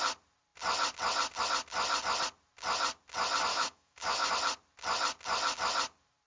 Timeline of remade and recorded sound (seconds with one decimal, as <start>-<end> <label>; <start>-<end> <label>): 0.0-3.5 recorded; 3.5-4.3 remade; 4.3-6.3 recorded